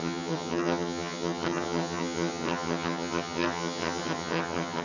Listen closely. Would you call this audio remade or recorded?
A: remade